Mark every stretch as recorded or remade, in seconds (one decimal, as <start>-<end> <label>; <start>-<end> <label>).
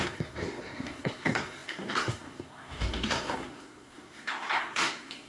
0.0-5.3 remade